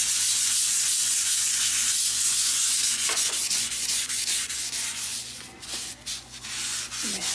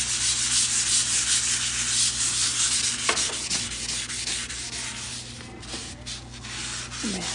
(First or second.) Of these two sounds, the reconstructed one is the first